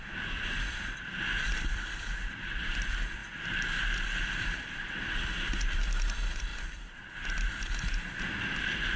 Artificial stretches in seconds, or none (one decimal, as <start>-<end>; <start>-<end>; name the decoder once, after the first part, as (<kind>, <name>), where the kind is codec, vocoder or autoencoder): 0.0-3.2 (vocoder, BigVGAN v2); 4.2-9.0